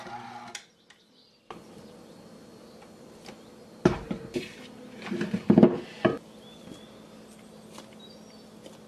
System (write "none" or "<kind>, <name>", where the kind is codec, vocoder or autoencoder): none